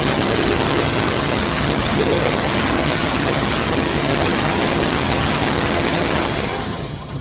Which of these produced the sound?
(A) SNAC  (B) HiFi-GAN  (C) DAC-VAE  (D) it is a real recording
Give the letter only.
B